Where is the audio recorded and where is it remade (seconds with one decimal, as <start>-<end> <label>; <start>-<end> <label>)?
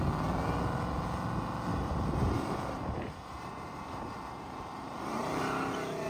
0.0-1.7 recorded; 1.7-5.4 remade; 5.4-6.1 recorded